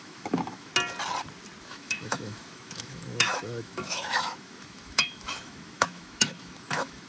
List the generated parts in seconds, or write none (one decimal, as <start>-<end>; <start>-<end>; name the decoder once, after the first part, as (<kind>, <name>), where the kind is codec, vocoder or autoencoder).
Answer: 0.0-0.7 (autoencoder, DAC-VAE); 1.6-7.1